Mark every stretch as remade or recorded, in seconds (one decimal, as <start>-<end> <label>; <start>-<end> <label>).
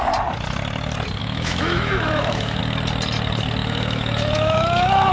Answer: 0.0-1.2 recorded; 1.2-2.6 remade; 2.6-3.6 recorded; 3.6-5.1 remade